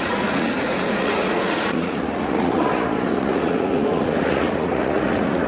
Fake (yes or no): yes